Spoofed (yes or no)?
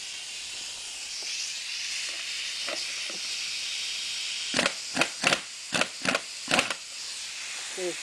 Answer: no